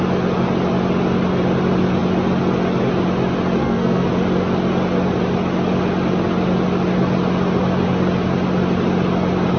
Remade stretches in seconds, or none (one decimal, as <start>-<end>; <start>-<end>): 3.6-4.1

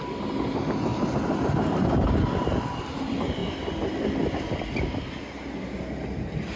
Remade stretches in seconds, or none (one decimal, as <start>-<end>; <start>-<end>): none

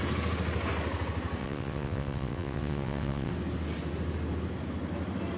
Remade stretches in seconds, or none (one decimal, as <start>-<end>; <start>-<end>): 1.4-3.3

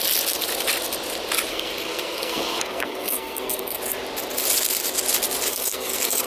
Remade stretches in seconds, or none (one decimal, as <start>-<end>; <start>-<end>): 1.5-3.8; 5.5-6.3

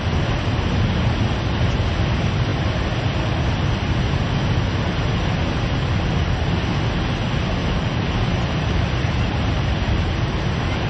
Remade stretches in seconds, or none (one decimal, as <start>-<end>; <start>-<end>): 7.6-10.9